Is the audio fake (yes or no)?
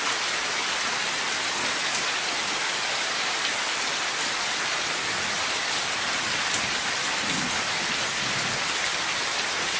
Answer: no